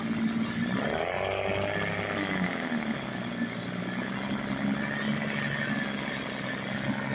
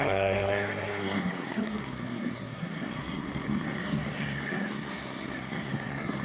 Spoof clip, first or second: second